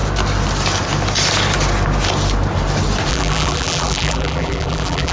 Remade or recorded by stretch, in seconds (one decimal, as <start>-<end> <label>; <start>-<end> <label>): 0.0-3.1 recorded; 3.1-5.1 remade